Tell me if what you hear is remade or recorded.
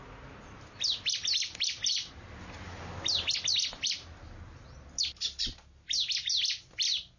recorded